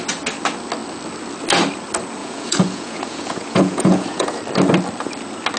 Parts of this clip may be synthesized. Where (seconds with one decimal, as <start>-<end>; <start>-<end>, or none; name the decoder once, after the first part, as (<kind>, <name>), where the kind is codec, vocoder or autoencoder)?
2.2-4.4 (vocoder, Vocos)